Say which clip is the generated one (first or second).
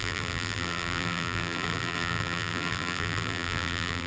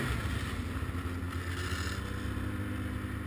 first